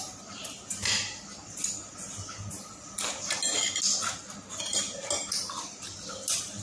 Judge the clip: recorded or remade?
recorded